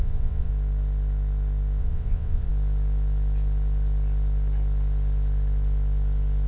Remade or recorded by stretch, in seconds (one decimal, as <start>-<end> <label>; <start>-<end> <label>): 0.0-0.5 remade; 0.5-1.8 recorded; 1.8-2.5 remade; 2.5-6.5 recorded